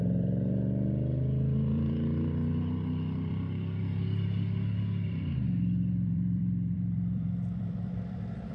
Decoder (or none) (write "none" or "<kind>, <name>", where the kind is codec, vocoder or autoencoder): vocoder, BigVGAN v2